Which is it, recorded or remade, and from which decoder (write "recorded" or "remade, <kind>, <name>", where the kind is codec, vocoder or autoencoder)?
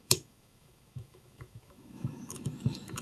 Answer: remade, autoencoder, DAC-VAE